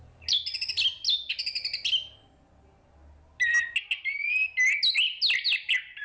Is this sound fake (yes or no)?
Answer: no